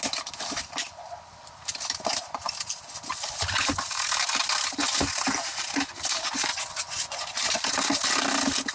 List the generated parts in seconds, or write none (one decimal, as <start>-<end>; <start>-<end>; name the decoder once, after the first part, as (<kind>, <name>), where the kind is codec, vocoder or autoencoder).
6.5-7.5 (vocoder, Vocos)